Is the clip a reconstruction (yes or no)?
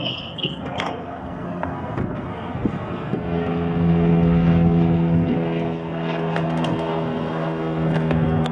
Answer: yes